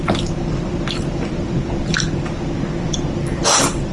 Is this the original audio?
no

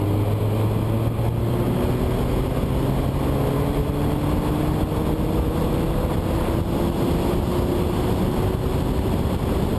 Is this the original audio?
yes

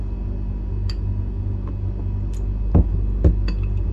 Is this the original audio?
yes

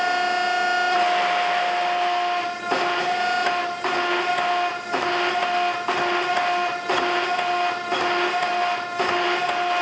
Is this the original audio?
yes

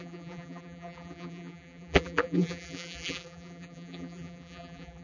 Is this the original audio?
no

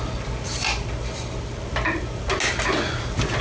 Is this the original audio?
yes